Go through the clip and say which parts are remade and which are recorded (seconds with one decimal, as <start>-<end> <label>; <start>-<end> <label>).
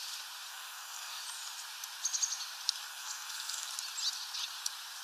0.0-0.5 recorded; 0.5-1.2 remade; 1.2-2.9 recorded; 2.9-3.7 remade; 3.7-5.0 recorded